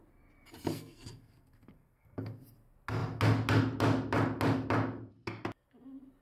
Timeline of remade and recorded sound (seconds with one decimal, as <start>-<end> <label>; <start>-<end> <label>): 0.0-0.7 recorded; 0.7-2.4 remade; 2.4-6.2 recorded